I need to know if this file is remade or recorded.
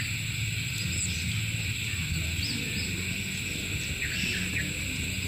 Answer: recorded